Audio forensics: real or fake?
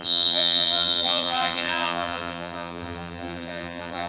fake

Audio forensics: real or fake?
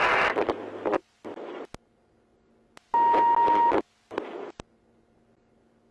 real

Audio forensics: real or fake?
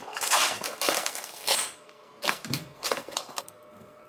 fake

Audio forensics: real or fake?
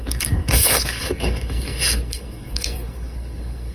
fake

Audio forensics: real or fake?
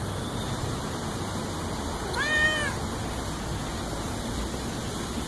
real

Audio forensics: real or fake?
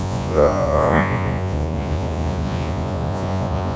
fake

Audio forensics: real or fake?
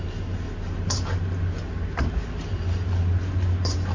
real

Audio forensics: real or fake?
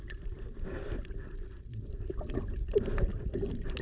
real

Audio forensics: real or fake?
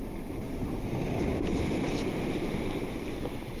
real